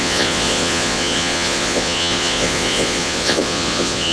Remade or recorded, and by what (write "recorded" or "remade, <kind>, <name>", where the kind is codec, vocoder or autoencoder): remade, vocoder, Vocos